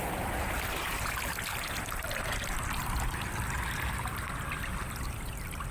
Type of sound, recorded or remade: recorded